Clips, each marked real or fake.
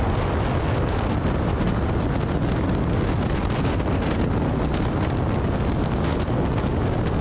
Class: real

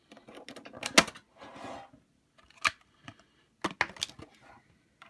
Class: real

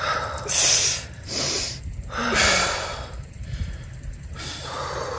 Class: fake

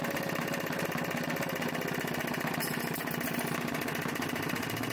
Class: real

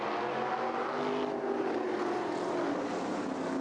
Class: real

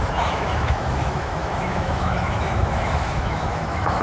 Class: fake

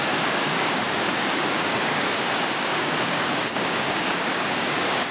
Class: fake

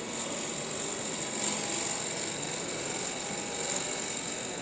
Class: real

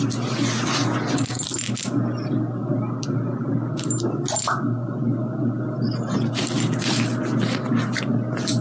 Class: real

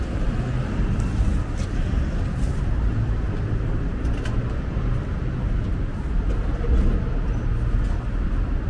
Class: real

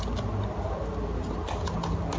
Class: real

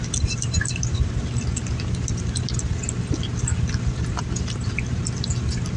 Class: real